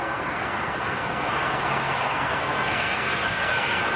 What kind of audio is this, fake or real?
fake